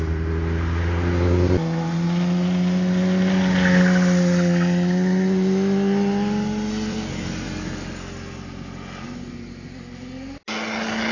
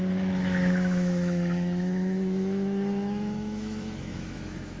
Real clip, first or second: first